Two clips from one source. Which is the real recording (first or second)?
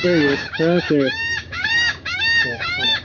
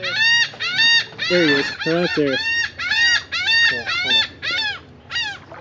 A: second